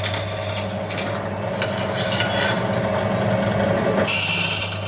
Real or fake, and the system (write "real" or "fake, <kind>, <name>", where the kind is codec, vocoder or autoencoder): real